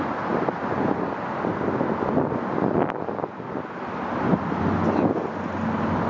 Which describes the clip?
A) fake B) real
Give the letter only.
B